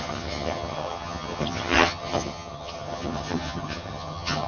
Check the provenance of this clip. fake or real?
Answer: fake